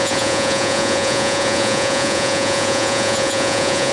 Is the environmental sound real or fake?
fake